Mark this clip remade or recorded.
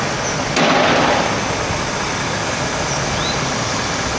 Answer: recorded